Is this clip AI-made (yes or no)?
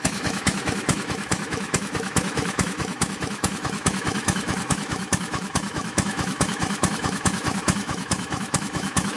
yes